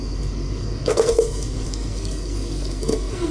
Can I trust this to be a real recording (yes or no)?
no